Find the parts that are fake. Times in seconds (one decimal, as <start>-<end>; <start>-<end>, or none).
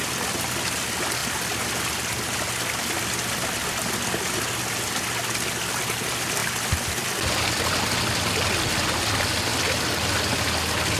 none